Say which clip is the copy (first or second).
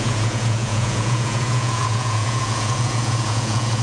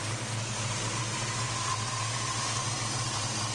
first